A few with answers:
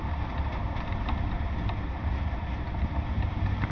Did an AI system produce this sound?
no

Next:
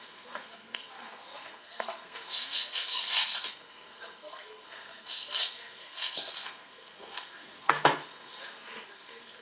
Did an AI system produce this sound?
yes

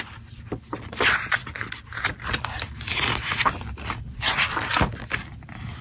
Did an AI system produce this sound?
no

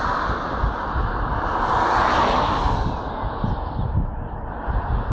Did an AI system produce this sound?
no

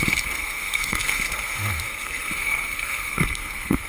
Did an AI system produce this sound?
yes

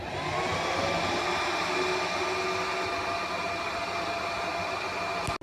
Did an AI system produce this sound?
no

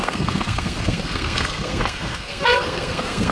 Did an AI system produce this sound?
yes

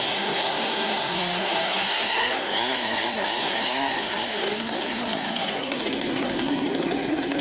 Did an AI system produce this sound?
yes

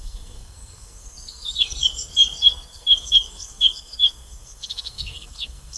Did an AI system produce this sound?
yes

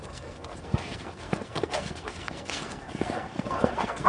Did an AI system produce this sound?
yes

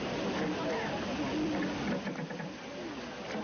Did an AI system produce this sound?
no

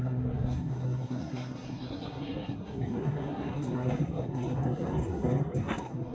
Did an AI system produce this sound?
yes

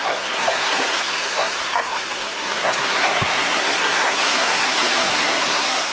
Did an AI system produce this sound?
yes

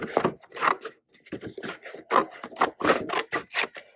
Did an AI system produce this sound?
no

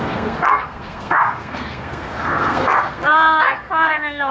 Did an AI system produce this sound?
yes